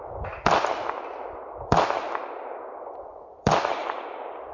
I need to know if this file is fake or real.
fake